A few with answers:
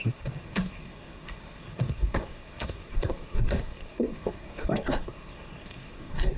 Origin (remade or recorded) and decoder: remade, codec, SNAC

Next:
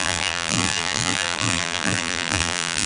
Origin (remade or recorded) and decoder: remade, vocoder, BigVGAN v2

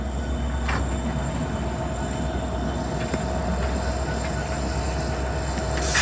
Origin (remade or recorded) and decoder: recorded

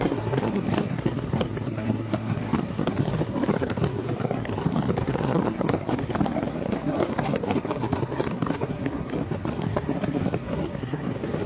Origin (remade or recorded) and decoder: remade, codec, SNAC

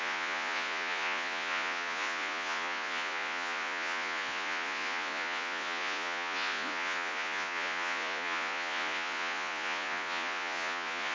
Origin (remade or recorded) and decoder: remade, vocoder, Vocos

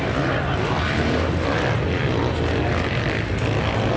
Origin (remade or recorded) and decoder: recorded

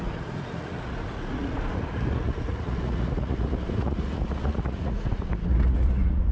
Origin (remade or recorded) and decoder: remade, vocoder, Vocos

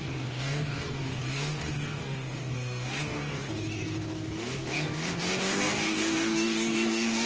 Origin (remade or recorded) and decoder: remade, codec, DAC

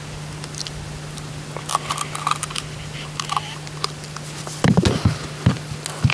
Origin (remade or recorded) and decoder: recorded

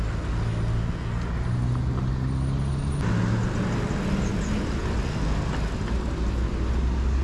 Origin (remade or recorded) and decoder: recorded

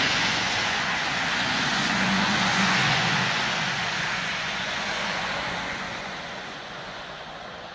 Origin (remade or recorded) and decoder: remade, vocoder, Vocos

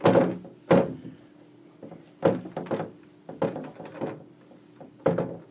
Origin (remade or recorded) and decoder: recorded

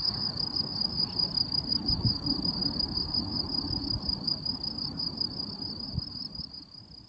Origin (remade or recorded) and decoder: recorded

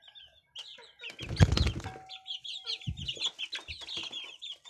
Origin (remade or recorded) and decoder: recorded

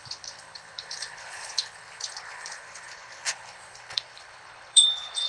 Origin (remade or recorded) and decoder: remade, codec, HILCodec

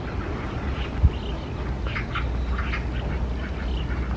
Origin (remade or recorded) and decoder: recorded